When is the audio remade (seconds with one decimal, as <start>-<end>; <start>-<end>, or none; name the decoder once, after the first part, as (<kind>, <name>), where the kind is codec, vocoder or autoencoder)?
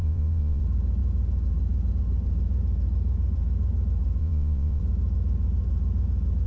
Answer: 0.0-0.6 (vocoder, Vocos); 4.2-4.8